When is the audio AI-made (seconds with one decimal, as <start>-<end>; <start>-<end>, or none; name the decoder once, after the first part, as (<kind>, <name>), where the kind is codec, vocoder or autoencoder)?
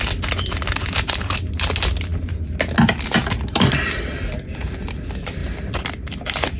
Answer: none